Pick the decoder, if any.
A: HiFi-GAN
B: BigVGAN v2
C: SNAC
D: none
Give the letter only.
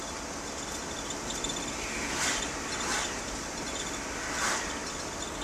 D